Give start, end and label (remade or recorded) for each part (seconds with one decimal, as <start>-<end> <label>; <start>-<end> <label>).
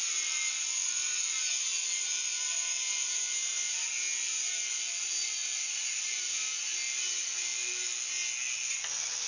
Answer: 0.0-3.2 remade; 3.2-5.4 recorded; 5.4-6.3 remade; 6.3-9.3 recorded